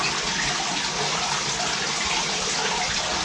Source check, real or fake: real